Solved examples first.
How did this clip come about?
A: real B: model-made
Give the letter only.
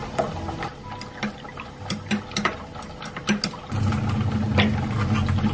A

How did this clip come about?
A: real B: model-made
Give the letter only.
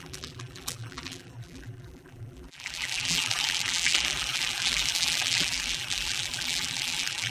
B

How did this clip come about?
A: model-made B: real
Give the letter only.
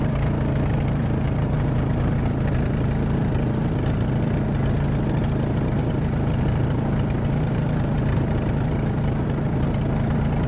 B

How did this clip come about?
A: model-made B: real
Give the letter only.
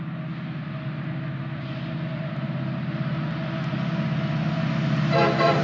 B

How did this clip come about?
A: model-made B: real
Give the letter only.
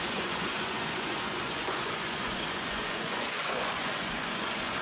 A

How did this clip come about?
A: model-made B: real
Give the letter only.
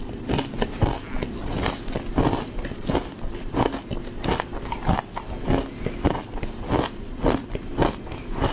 B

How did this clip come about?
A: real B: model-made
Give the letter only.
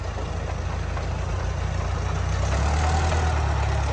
A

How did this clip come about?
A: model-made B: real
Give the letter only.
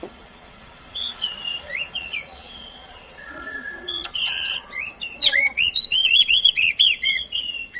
A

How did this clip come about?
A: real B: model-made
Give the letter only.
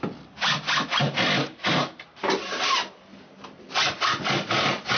A